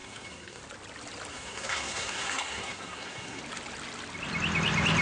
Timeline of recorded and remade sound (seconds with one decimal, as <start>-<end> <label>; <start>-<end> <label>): 0.0-0.6 remade; 0.6-1.3 recorded; 1.3-3.4 remade; 3.4-5.0 recorded